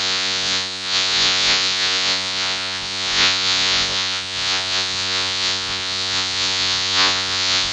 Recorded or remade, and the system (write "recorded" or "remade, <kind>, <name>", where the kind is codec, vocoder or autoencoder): remade, vocoder, Vocos